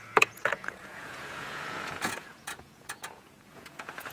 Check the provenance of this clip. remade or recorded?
remade